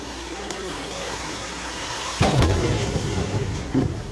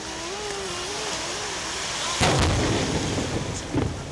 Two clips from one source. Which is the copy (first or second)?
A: first